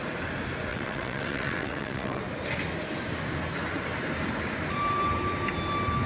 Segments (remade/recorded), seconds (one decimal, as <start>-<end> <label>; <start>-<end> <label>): 0.0-0.7 recorded; 0.7-2.2 remade; 2.2-6.1 recorded